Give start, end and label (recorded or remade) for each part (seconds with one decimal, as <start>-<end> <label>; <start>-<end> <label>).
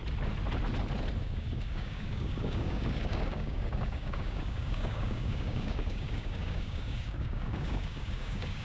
0.0-1.2 recorded; 1.2-8.6 remade